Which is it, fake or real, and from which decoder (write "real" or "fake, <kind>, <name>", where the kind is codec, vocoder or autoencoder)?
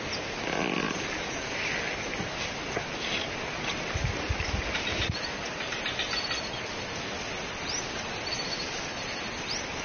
real